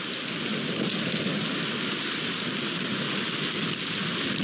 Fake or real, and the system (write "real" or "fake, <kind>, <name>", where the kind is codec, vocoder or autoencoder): real